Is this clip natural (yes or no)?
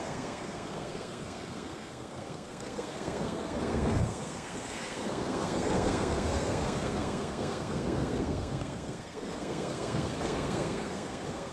no